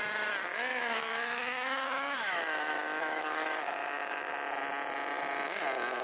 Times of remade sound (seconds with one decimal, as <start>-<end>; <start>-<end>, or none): 0.7-4.3